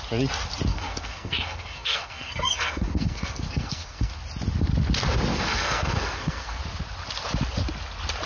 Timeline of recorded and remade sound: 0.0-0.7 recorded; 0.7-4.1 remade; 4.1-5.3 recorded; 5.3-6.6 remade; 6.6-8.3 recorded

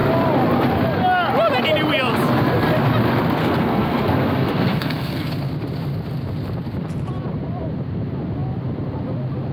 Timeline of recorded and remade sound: 0.0-3.4 recorded; 3.4-5.3 remade; 5.3-9.5 recorded

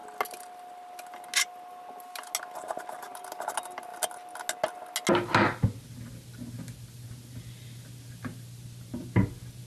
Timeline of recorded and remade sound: 0.0-9.7 recorded

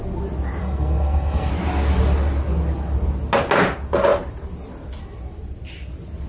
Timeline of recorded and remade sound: 0.0-0.6 recorded; 0.6-1.5 remade; 1.5-6.3 recorded

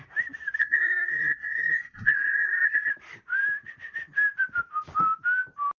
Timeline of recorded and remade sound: 0.0-0.6 recorded; 0.6-2.9 remade; 2.9-5.8 recorded

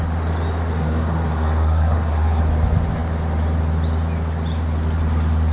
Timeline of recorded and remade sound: 0.0-0.7 recorded; 0.7-2.4 remade; 2.4-5.5 recorded